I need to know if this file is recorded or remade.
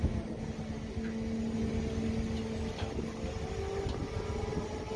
recorded